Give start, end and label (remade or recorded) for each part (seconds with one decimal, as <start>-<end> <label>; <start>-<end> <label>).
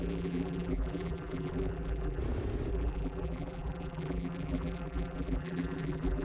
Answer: 0.0-2.2 remade; 2.2-2.7 recorded; 2.7-6.2 remade